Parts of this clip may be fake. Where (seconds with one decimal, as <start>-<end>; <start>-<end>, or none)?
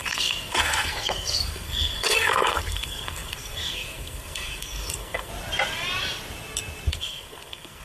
0.0-5.3; 6.9-7.8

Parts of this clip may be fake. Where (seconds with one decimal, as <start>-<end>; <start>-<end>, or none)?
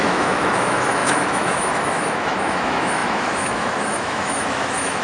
0.0-5.0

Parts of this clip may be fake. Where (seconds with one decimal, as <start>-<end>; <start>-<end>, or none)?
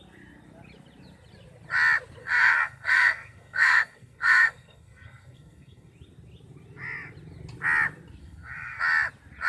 2.2-5.9; 8.2-8.8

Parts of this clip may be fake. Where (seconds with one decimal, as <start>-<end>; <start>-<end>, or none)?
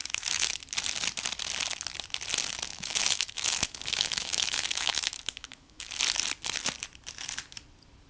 0.0-0.5; 2.7-6.0